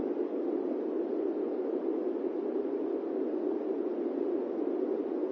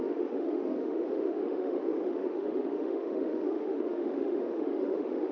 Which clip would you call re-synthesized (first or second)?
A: second